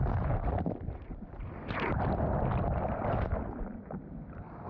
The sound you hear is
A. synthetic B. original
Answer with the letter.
B